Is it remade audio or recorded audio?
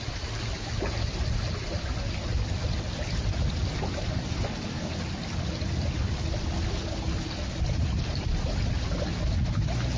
recorded